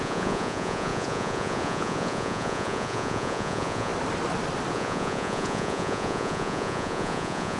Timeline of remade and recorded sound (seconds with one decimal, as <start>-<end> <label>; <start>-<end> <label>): 0.0-3.9 remade; 3.9-4.7 recorded; 4.7-7.6 remade